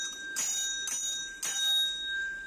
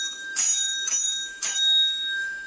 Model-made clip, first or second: second